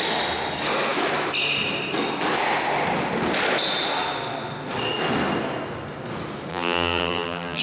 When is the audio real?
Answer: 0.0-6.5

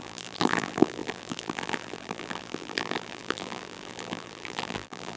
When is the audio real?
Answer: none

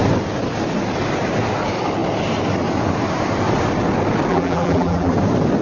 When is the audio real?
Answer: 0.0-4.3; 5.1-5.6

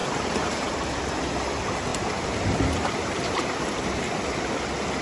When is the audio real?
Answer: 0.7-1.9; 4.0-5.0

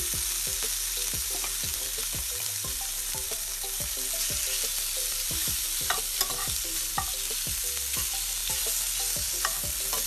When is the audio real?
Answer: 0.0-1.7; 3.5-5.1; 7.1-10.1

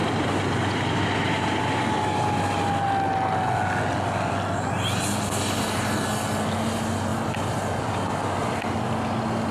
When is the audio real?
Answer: 1.0-7.1; 7.8-9.5

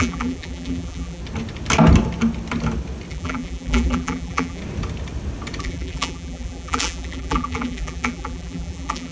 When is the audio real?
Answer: 1.2-3.1; 4.6-5.6

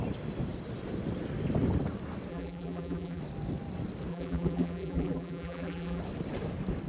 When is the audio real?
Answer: 0.0-2.3; 3.2-4.1; 6.0-6.9